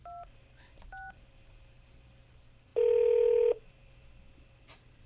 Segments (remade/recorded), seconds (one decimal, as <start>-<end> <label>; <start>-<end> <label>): 0.0-5.1 recorded